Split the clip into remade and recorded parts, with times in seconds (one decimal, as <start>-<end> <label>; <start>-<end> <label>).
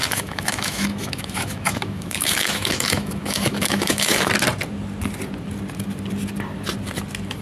0.0-4.3 remade; 4.3-7.4 recorded